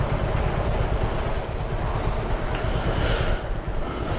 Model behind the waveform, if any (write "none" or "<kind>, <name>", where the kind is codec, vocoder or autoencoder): none